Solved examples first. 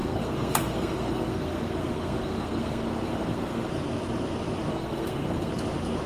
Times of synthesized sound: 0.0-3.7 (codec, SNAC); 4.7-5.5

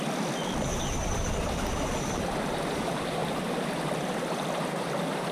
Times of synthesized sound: 0.0-3.2 (vocoder, BigVGAN v2)

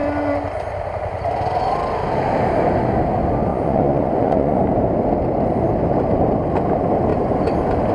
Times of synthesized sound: 3.5-4.6 (vocoder, Vocos)

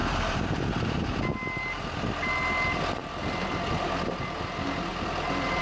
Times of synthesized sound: 0.0-1.2 (vocoder, BigVGAN v2); 4.9-5.6

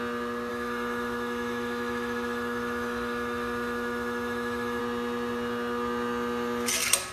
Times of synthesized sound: 0.5-4.8 (autoencoder, DAC-VAE)